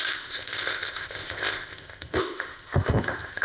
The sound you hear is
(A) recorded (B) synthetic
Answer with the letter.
B